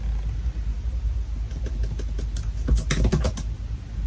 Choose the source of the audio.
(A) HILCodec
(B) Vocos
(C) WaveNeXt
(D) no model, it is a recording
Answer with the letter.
D